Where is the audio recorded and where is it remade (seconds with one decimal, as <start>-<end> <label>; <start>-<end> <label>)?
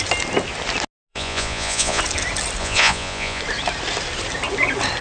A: 0.0-1.1 recorded; 1.1-2.0 remade; 2.0-2.6 recorded; 2.6-3.4 remade; 3.4-5.0 recorded